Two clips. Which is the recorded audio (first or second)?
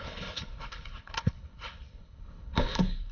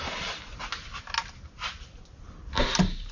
second